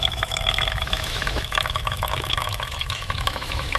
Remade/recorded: remade